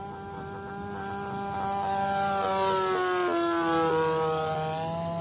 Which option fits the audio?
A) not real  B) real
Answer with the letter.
B